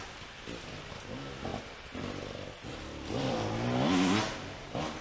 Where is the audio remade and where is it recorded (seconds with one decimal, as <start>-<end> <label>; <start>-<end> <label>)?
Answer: 0.0-5.0 recorded